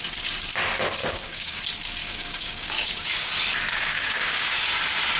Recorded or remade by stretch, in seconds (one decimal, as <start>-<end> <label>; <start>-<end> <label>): 0.0-1.0 recorded; 1.0-1.6 remade; 1.6-2.0 recorded; 2.0-3.3 remade; 3.3-3.7 recorded; 3.7-4.6 remade; 4.6-5.2 recorded